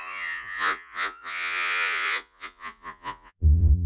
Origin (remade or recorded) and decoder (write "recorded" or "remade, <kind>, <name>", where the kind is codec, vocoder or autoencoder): remade, vocoder, Vocos